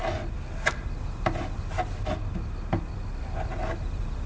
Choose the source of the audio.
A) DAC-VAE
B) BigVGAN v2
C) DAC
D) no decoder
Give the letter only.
D